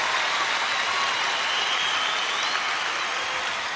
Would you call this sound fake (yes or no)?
no